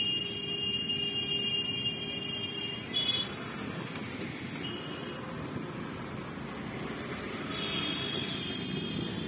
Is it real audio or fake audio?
real